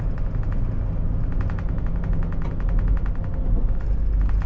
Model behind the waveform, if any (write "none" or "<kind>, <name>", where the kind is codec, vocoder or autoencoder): none